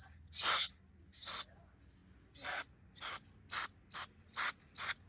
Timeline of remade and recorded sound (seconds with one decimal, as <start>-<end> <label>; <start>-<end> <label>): 0.0-5.1 recorded